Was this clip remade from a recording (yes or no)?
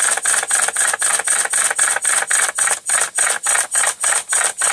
no